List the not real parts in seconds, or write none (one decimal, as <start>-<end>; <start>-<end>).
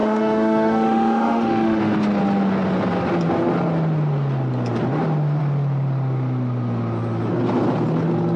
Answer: 0.0-1.8